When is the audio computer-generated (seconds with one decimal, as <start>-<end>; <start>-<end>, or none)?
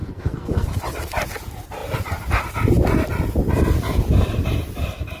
0.0-0.7